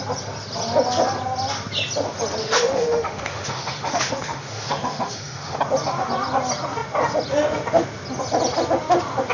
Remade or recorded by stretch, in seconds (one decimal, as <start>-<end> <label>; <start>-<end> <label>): 0.0-2.4 recorded; 2.4-5.6 remade; 5.6-9.3 recorded